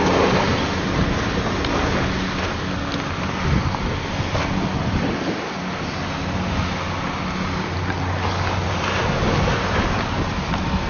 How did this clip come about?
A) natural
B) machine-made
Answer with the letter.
A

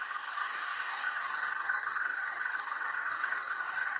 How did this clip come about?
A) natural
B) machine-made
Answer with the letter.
B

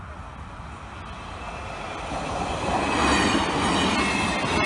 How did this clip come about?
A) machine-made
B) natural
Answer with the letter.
B